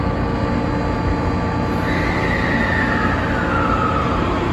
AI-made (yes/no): no